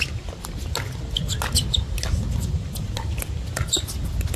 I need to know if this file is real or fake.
real